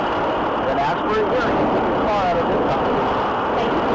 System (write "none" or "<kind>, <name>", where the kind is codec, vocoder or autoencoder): none